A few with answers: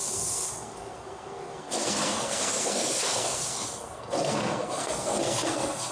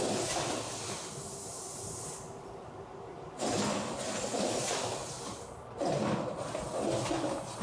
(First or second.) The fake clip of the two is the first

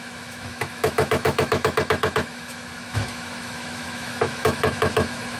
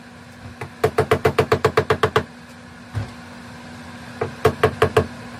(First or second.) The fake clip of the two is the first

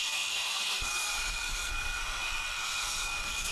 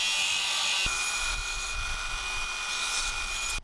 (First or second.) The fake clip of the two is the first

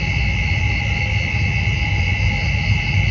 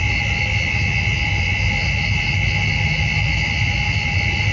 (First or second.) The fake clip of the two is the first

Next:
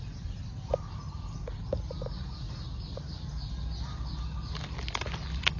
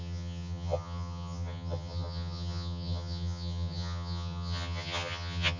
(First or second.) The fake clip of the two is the second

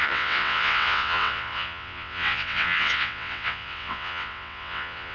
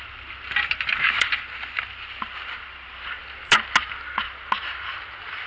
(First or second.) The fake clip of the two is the first